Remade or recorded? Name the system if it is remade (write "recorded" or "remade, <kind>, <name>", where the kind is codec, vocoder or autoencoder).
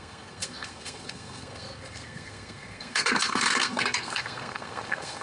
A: remade, codec, SNAC